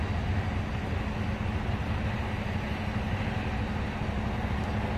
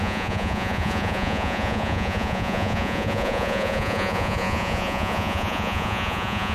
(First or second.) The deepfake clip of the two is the second